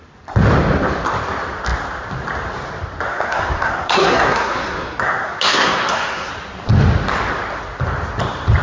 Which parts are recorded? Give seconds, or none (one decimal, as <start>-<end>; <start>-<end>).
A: 0.0-3.1; 6.3-8.6